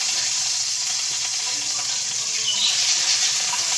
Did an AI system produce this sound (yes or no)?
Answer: no